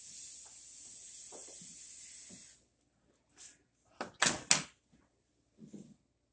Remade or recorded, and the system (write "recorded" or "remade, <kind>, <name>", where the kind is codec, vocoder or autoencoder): recorded